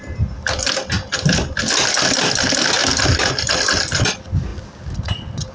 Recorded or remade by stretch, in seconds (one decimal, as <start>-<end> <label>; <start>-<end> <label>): 0.0-5.5 recorded